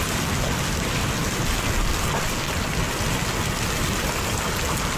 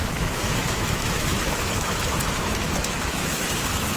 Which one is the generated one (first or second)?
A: second